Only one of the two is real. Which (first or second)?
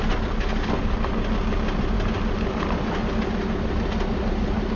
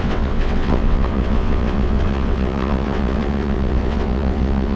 first